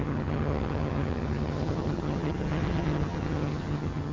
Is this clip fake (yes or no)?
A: yes